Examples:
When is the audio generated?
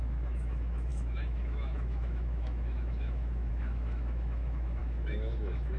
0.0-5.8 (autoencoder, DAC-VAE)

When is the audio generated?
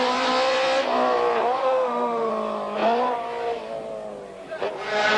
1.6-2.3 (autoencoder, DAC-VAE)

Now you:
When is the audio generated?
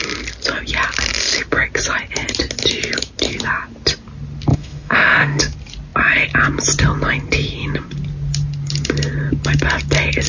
4.5-5.4 (autoencoder, DAC-VAE)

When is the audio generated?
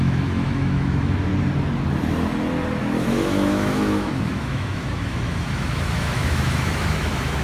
0.0-1.3 (autoencoder, DAC-VAE); 2.8-7.4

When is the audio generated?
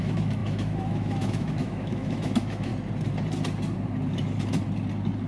0.0-2.7 (autoencoder, DAC-VAE)